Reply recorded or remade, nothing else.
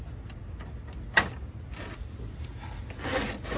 recorded